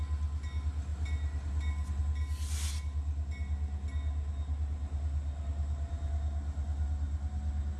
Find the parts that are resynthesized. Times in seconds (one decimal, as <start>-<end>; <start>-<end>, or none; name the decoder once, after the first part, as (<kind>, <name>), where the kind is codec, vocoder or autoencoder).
none